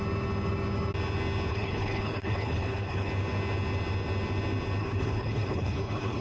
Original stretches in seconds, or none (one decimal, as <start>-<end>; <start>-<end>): 0.0-1.5; 3.1-4.8